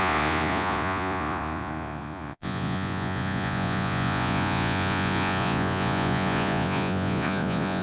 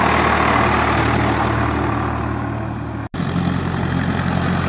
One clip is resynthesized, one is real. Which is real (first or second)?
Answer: second